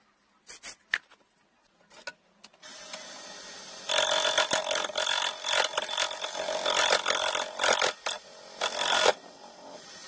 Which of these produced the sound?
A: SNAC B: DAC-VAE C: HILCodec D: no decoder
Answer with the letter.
D